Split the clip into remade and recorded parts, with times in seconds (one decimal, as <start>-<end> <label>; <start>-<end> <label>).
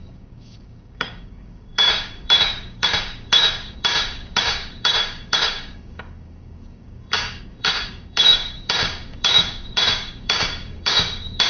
0.0-11.5 remade